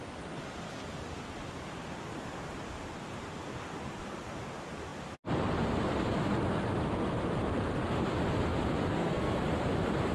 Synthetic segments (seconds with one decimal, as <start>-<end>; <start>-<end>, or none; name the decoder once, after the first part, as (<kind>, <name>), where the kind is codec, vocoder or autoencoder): 8.9-9.4 (codec, SNAC)